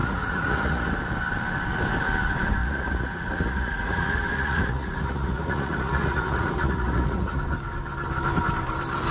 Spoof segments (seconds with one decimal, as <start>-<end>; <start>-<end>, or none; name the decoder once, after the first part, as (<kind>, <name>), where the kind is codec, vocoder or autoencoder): 0.0-0.9 (vocoder, Vocos); 2.6-7.4